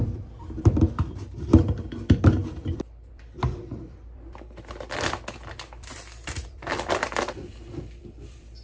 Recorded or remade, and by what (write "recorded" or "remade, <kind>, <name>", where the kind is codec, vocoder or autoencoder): remade, vocoder, BigVGAN v2